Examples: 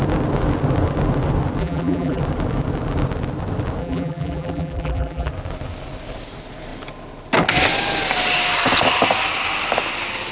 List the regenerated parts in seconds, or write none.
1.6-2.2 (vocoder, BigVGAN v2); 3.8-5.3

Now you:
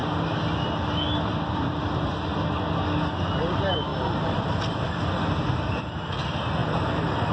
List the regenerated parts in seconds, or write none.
3.4-3.9 (vocoder, BigVGAN v2); 5.8-7.3

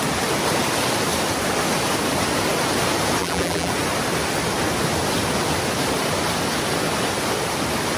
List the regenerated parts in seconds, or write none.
3.2-3.7 (vocoder, BigVGAN v2)

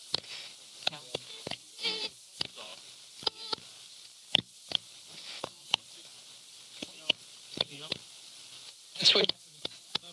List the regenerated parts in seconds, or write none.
0.0-10.1 (vocoder, BigVGAN v2)

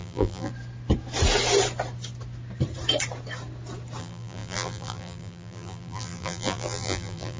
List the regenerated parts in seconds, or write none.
0.0-0.5 (vocoder, BigVGAN v2); 4.0-7.4

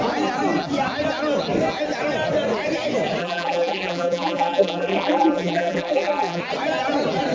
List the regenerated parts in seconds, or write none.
3.2-6.4 (vocoder, BigVGAN v2)